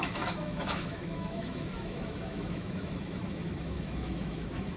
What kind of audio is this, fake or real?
fake